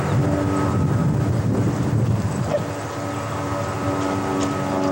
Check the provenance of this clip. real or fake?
real